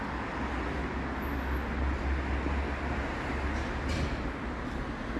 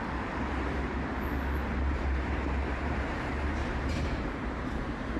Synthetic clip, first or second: second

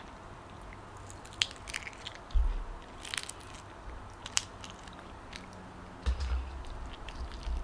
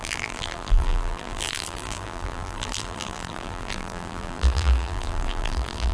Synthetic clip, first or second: second